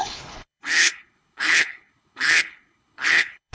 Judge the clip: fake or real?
fake